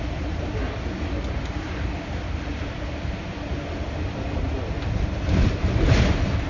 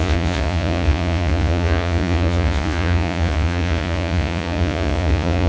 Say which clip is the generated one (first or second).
second